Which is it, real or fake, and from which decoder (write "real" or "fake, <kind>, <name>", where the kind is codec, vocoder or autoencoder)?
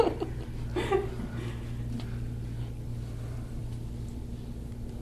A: real